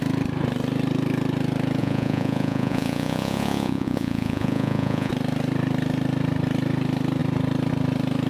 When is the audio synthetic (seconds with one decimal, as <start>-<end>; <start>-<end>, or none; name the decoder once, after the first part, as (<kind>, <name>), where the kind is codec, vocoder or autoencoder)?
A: 1.8-5.1 (vocoder, Vocos)